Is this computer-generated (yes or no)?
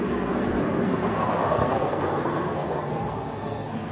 yes